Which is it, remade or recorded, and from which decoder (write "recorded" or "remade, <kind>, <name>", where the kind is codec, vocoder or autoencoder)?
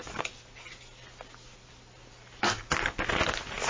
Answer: recorded